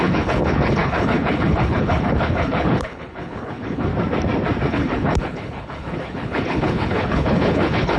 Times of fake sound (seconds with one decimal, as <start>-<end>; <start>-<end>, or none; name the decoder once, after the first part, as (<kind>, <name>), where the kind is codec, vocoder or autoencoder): 0.0-3.9 (codec, HILCodec); 4.7-8.0